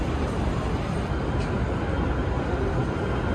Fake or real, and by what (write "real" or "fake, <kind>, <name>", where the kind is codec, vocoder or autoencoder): real